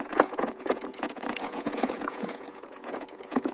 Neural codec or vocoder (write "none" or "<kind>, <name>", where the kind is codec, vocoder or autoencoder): vocoder, Vocos